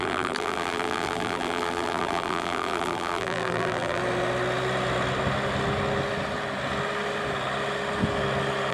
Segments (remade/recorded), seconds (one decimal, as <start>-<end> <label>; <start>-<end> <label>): 0.0-4.0 remade; 4.0-8.7 recorded